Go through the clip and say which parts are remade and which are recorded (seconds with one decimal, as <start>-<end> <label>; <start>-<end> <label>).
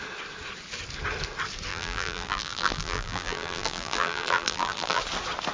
0.0-1.7 recorded; 1.7-5.0 remade; 5.0-5.5 recorded